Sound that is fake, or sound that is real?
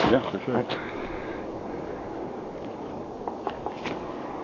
fake